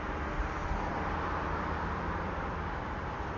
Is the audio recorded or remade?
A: recorded